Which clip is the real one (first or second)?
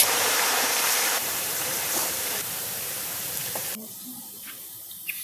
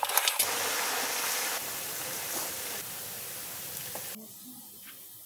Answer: second